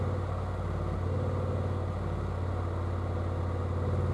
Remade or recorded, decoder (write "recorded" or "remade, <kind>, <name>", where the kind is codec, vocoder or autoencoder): recorded